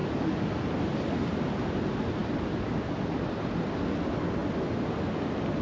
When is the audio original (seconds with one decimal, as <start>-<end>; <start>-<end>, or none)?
0.0-5.6